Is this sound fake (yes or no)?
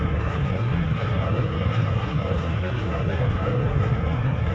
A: yes